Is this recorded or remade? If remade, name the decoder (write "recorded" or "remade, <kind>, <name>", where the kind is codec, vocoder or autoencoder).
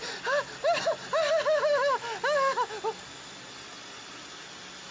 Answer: recorded